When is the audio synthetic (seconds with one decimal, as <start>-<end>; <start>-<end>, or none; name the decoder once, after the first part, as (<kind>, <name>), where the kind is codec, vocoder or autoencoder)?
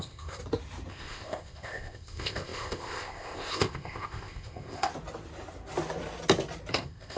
0.0-0.4 (codec, ZipCodec); 0.9-4.9; 6.7-7.2